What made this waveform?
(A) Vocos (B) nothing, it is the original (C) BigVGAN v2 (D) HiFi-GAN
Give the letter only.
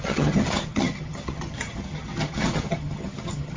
D